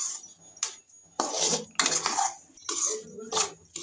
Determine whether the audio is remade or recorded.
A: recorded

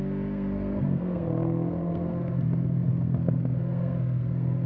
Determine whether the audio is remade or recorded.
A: remade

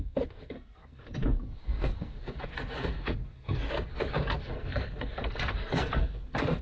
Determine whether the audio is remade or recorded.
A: remade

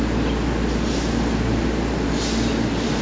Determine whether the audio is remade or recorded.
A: recorded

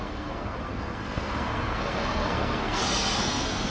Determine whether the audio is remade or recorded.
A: remade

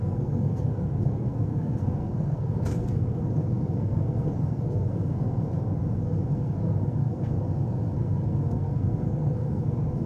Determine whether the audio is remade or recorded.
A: remade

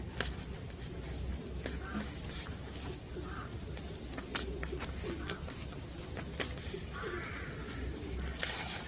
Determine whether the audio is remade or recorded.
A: recorded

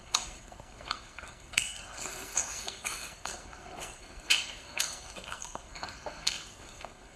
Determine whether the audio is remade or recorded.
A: remade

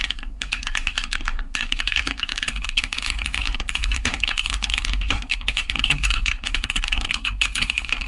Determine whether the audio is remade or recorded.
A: remade